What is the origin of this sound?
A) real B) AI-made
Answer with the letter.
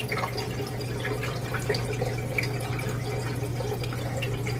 A